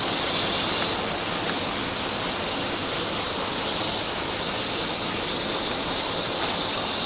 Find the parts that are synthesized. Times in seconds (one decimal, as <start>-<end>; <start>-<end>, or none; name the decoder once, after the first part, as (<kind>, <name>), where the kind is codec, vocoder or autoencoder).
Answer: none